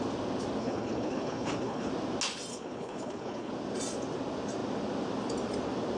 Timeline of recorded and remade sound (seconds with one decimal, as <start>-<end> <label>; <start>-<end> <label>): 0.0-0.6 recorded; 0.6-1.9 remade; 1.9-2.5 recorded; 2.5-3.5 remade; 3.5-6.0 recorded